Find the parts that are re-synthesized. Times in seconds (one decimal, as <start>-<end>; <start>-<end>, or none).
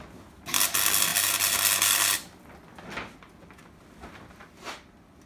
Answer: none